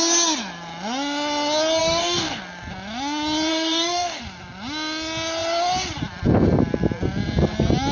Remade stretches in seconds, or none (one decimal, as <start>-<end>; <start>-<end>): 1.8-2.4; 3.5-4.2